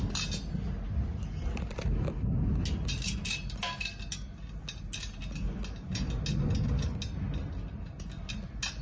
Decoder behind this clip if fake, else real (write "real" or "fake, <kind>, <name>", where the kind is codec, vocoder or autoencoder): real